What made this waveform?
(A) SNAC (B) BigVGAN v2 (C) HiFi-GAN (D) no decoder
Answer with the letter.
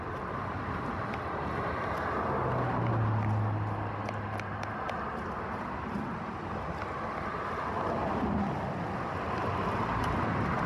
D